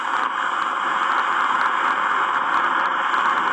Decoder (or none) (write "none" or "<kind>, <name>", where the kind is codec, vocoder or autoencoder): none